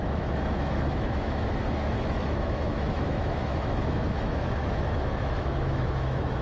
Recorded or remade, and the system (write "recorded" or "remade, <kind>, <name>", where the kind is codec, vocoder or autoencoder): remade, autoencoder, DAC-VAE